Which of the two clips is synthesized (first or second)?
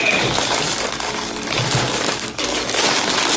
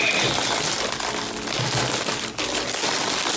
first